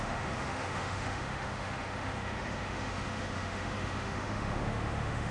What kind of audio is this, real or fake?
fake